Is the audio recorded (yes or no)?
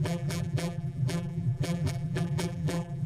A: no